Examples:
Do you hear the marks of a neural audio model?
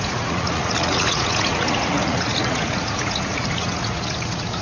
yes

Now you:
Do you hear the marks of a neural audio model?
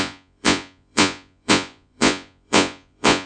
yes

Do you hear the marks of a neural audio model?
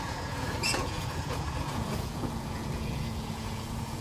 yes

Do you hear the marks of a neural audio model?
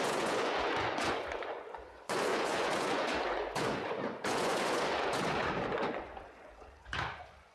yes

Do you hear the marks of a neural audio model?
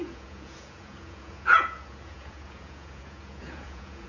yes